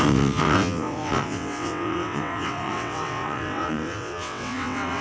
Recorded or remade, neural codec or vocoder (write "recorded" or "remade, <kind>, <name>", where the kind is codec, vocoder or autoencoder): remade, vocoder, WaveNeXt